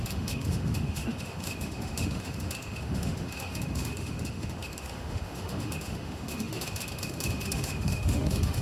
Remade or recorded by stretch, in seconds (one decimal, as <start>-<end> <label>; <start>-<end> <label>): 0.0-8.6 remade